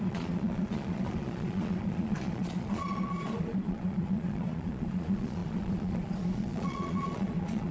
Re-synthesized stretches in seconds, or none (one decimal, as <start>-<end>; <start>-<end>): 0.0-7.7